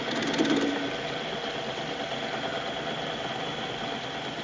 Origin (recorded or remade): recorded